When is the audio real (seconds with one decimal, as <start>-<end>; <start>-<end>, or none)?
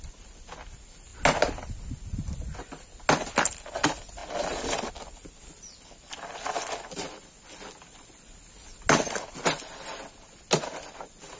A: 0.0-11.4